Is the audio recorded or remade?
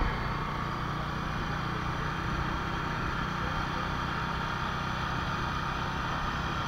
recorded